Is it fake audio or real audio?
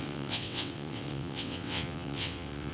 fake